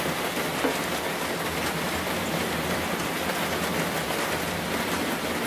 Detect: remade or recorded recorded